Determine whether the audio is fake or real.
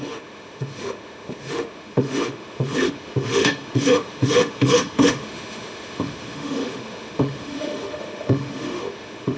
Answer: fake